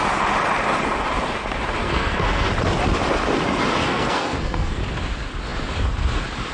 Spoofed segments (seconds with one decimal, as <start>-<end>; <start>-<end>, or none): 1.8-2.5; 3.8-4.8